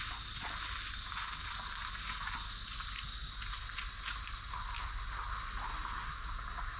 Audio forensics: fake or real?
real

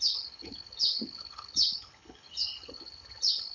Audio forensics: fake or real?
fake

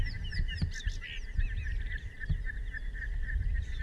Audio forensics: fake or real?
real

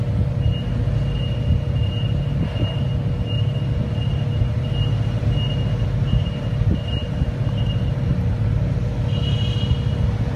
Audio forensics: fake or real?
real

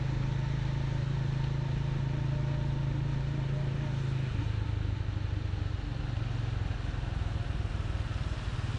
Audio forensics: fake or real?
real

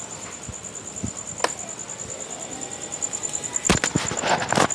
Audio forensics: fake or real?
real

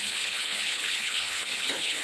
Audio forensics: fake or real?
fake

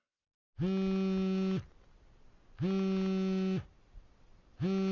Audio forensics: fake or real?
real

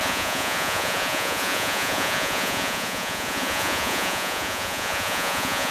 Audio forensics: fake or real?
fake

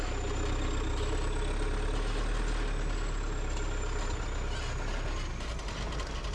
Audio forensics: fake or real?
real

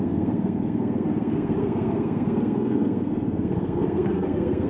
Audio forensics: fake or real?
fake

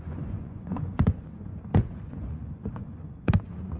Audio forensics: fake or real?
fake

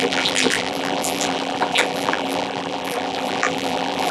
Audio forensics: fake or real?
fake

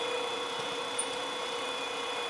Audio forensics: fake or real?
fake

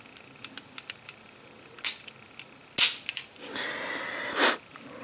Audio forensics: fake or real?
real